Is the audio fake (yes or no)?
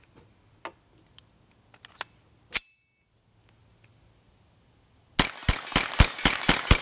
no